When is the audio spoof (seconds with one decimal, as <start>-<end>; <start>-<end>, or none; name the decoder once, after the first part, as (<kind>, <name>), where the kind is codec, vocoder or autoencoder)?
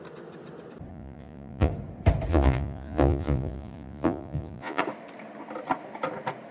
0.9-1.7 (vocoder, Vocos); 2.3-4.8